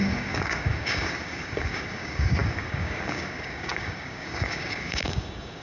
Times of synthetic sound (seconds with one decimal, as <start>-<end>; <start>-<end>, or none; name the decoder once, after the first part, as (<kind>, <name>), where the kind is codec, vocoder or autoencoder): 0.0-5.6 (codec, DAC)